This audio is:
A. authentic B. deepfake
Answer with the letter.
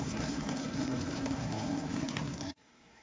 B